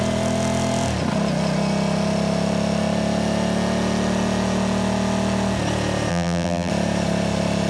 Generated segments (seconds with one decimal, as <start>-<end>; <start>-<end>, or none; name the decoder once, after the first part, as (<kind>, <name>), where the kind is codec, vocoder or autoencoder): 6.1-6.7 (vocoder, BigVGAN v2)